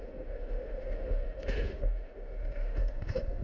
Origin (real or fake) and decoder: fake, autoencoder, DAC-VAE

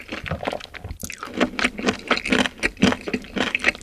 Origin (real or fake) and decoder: real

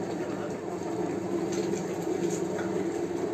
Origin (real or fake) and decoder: real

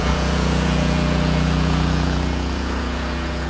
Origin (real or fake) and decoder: fake, vocoder, Vocos